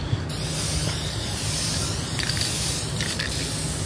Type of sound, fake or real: real